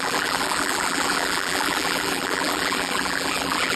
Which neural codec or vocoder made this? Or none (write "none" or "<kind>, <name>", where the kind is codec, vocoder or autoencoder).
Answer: vocoder, BigVGAN v2